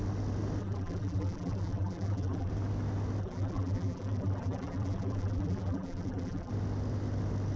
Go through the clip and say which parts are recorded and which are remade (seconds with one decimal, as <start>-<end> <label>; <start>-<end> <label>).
0.0-0.6 recorded; 0.6-2.5 remade; 2.5-3.2 recorded; 3.2-6.5 remade; 6.5-7.6 recorded